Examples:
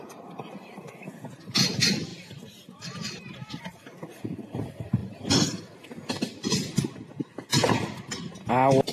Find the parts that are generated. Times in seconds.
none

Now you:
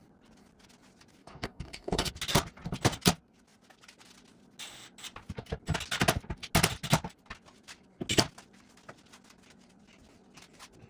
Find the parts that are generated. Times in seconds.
1.2-2.1 (codec, DAC)